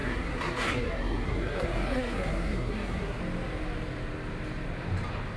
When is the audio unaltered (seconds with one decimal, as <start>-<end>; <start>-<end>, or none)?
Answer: 3.2-5.4